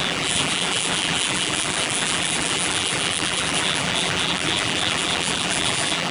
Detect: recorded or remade remade